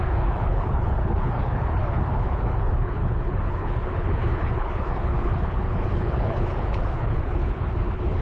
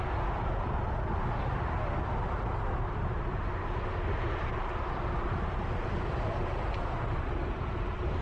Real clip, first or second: second